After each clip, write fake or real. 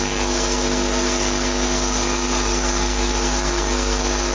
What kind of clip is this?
fake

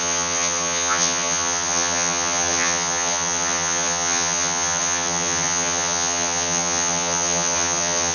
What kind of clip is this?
fake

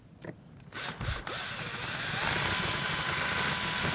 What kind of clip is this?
real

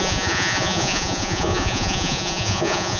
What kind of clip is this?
fake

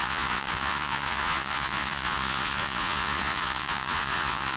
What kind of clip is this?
fake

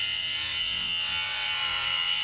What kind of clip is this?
fake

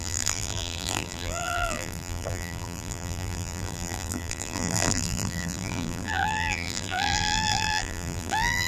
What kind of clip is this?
fake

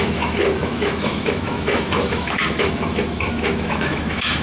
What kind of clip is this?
fake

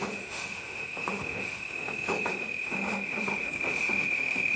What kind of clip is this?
fake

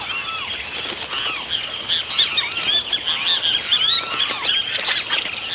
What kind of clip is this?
real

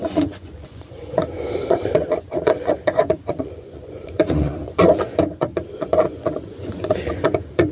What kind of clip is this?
fake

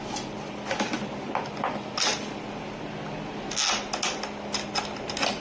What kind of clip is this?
real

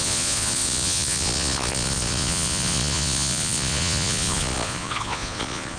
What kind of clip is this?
fake